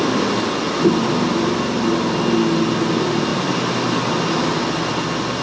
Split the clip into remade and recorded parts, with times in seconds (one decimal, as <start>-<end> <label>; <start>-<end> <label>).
0.0-5.4 recorded